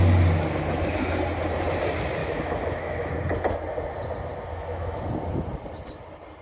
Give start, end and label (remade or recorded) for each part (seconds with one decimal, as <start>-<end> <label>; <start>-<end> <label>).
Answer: 0.0-2.2 recorded; 2.2-3.1 remade; 3.1-4.5 recorded; 4.5-5.0 remade; 5.0-6.4 recorded